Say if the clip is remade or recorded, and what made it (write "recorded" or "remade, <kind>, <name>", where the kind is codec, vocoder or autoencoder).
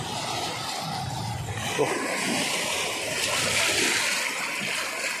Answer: recorded